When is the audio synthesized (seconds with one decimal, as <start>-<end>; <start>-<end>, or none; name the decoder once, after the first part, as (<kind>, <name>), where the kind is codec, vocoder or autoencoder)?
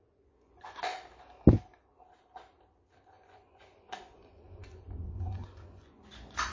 0.0-0.9 (vocoder, Vocos); 3.1-6.5